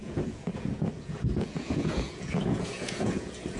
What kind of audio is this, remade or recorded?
remade